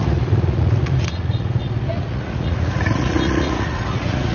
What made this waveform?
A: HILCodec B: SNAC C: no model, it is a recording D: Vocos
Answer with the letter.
D